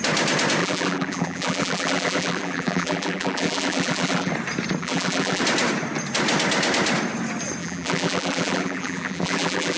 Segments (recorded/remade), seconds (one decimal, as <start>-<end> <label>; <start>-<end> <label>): 0.0-0.6 recorded; 0.6-4.3 remade; 4.3-4.8 recorded; 4.8-5.4 remade; 5.4-7.6 recorded; 7.6-9.8 remade